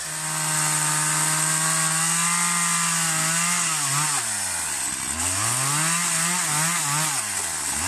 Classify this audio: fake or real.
real